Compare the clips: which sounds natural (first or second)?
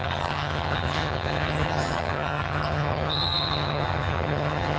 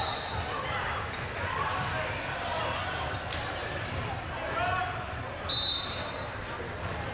second